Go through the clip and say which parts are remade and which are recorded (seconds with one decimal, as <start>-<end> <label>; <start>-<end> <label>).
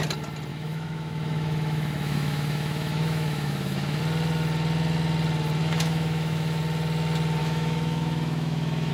0.0-0.5 recorded; 0.5-4.0 remade; 4.0-5.6 recorded; 5.6-6.6 remade; 6.6-7.4 recorded; 7.4-8.9 remade